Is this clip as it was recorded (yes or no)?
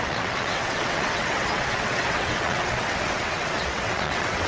no